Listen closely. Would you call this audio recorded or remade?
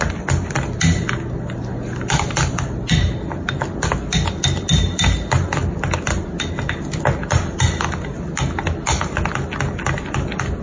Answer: recorded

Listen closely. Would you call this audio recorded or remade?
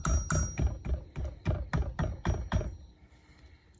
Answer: recorded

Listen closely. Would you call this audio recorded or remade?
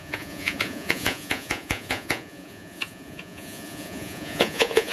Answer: remade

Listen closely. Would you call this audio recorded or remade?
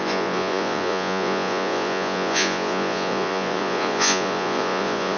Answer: remade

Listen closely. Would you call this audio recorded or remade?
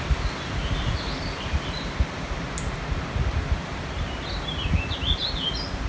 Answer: recorded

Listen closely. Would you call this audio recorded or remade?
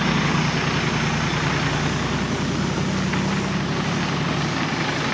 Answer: recorded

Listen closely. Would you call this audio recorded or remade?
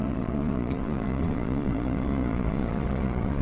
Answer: remade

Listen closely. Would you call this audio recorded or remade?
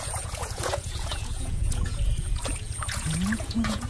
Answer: remade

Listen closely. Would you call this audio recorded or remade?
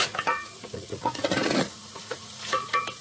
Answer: remade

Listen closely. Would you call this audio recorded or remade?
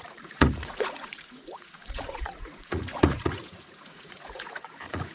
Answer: remade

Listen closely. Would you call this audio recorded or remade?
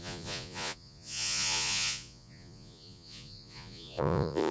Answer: remade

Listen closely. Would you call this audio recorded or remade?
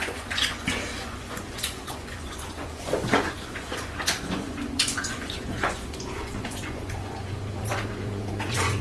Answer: remade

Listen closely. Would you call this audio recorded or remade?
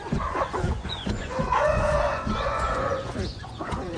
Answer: remade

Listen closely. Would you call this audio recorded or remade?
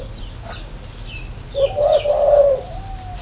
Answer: recorded